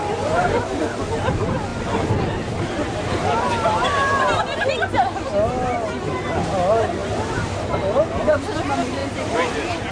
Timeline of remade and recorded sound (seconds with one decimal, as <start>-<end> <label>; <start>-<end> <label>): 0.0-9.9 recorded